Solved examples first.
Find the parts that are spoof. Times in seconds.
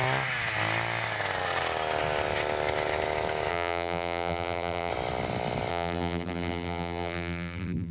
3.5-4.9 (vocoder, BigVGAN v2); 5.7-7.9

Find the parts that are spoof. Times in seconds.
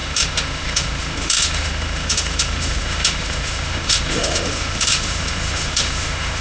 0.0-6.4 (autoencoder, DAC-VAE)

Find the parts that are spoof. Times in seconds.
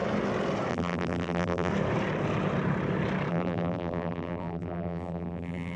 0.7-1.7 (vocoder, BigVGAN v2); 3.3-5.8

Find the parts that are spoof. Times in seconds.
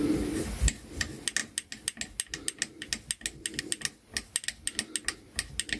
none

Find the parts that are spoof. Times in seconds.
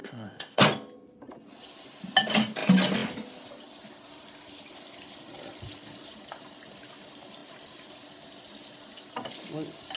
0.0-0.6 (codec, ZipCodec)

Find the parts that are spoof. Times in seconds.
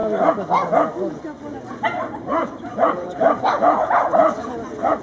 1.5-4.5 (vocoder, BigVGAN v2)